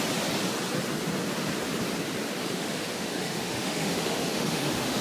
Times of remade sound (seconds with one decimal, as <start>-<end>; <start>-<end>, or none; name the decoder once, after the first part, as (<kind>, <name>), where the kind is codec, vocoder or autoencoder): 2.4-5.0 (autoencoder, DAC-VAE)